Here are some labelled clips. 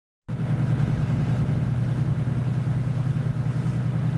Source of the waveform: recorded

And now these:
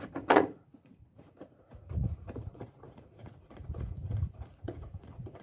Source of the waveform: remade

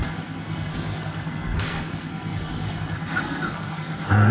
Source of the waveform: remade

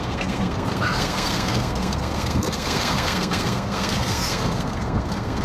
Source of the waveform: remade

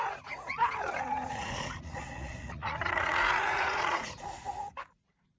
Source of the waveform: remade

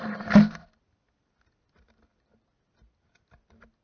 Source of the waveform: recorded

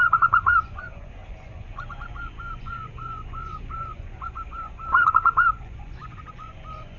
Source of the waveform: remade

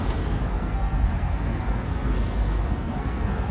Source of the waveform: remade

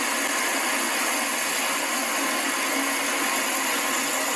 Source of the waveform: recorded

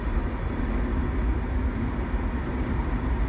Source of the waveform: recorded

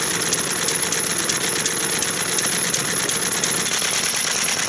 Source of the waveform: recorded